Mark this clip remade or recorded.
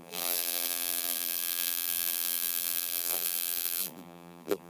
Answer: remade